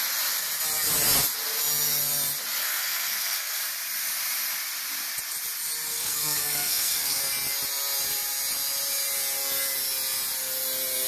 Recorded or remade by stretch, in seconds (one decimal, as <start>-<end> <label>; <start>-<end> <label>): 0.0-2.6 recorded; 2.6-3.6 remade; 3.6-5.9 recorded; 5.9-7.2 remade; 7.2-11.1 recorded